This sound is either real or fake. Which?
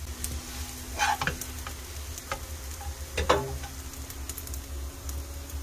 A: real